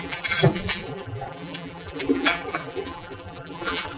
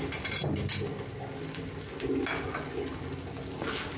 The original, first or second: second